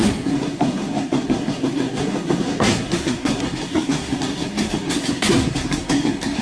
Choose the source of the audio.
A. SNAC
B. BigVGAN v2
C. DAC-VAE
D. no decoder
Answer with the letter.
A